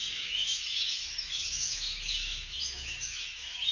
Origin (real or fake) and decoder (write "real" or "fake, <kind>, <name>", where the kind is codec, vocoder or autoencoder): fake, autoencoder, DAC-VAE